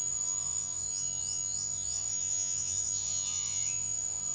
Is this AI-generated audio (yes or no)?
yes